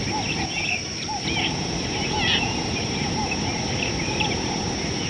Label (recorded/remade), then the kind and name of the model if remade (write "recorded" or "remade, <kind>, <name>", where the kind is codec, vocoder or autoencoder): recorded